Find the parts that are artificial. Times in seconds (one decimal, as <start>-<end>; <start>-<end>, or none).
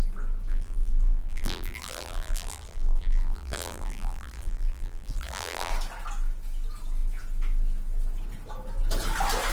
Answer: 0.5-5.7